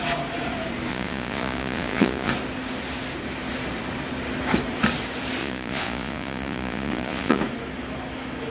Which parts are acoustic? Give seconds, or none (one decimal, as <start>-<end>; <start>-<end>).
0.0-0.9; 2.3-5.4; 7.4-8.5